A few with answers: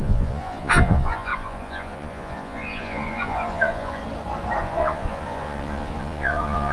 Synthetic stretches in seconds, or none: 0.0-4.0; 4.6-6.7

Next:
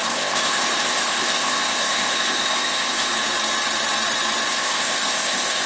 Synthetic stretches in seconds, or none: 0.0-3.1; 4.5-5.7

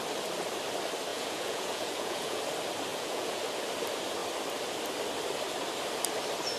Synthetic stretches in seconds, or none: 1.1-2.4; 2.9-3.4

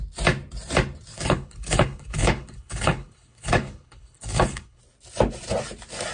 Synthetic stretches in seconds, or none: 1.1-4.8

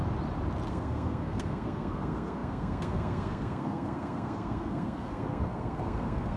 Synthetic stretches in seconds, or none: 0.7-6.4

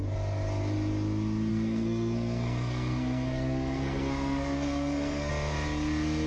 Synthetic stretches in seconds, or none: 1.5-5.3

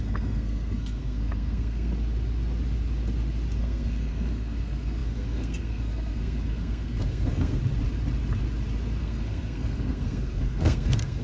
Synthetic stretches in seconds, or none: 0.0-1.9; 3.6-7.6; 9.0-11.2